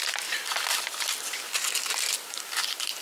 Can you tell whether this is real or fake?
fake